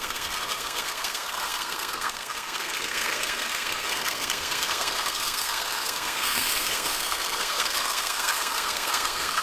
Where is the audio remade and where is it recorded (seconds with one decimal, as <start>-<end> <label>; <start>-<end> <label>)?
0.0-9.4 remade